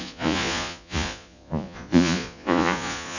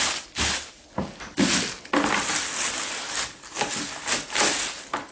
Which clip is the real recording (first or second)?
second